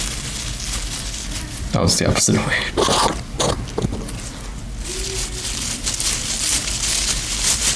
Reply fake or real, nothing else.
real